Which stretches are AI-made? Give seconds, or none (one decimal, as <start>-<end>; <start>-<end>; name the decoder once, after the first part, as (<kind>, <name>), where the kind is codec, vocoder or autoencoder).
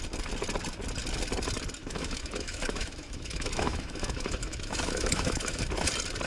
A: 1.8-5.6 (autoencoder, DAC-VAE)